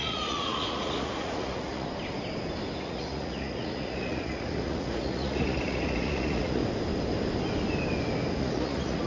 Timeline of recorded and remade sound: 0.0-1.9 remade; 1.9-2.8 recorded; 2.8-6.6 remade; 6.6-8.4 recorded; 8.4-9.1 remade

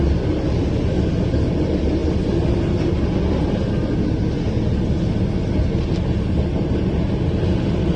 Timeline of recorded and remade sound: 0.0-8.0 recorded